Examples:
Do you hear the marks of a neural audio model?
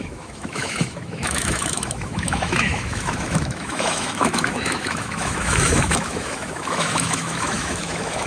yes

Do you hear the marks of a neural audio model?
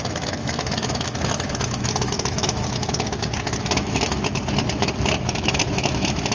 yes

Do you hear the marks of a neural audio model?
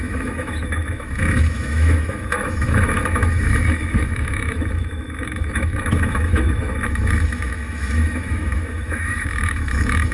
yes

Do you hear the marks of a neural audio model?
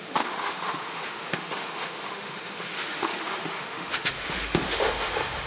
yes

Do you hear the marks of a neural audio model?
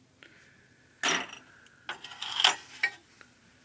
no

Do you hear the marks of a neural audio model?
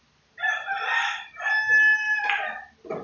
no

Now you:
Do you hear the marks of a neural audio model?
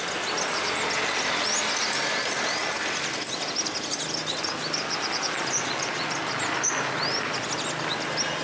no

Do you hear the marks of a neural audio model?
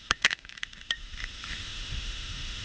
yes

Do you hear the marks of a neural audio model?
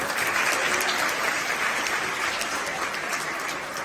no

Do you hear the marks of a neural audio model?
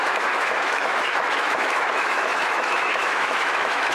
yes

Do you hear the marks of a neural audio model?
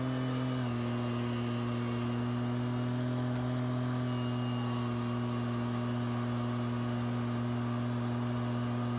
no